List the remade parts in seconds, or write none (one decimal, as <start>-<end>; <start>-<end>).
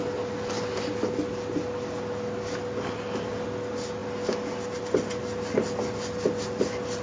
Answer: none